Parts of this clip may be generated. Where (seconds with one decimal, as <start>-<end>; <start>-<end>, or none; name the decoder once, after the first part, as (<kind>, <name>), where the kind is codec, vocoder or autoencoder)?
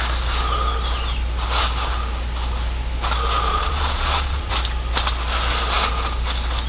3.5-4.5 (vocoder, Vocos)